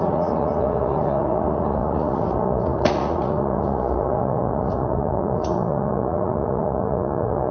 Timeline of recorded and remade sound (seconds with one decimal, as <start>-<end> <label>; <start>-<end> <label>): 0.0-7.5 remade